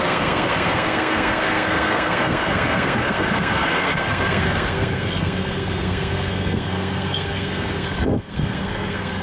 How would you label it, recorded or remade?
remade